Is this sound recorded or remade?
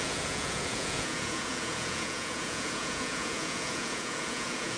remade